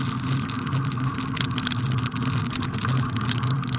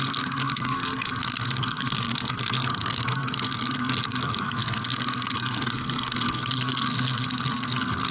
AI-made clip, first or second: second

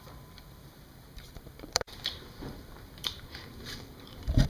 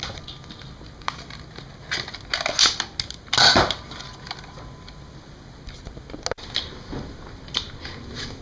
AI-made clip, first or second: first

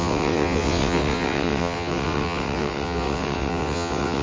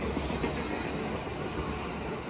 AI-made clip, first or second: first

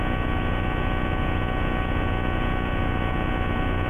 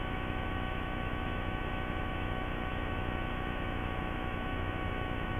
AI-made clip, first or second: second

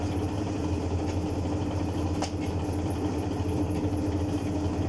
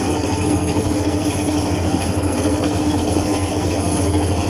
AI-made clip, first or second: second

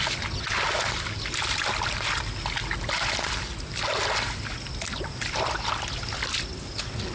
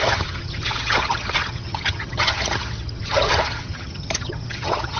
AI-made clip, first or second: second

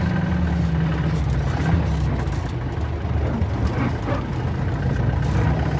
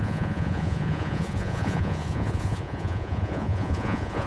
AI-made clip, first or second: second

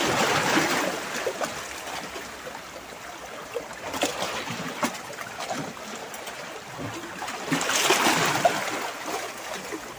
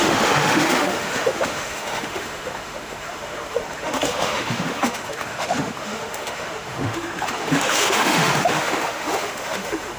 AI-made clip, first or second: second